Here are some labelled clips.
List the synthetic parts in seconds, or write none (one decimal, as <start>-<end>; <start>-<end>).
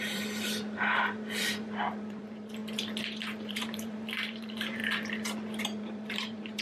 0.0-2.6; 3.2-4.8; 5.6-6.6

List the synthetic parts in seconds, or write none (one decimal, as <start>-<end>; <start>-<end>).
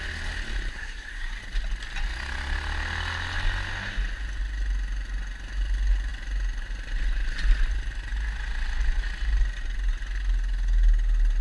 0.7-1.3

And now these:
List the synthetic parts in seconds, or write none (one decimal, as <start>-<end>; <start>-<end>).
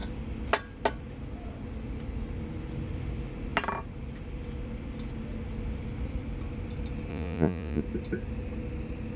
7.1-7.8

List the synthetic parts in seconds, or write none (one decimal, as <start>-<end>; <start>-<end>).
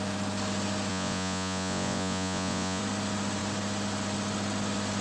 0.9-2.8